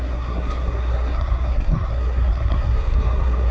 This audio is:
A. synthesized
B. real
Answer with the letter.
A